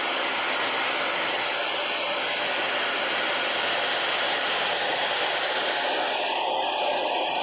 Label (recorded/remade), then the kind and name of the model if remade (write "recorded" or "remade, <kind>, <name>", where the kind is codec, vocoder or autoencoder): recorded